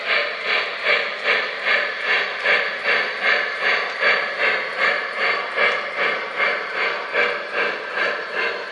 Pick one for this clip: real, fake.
fake